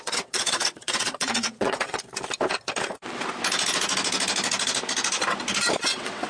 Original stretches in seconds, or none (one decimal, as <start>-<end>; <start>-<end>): 2.0-5.8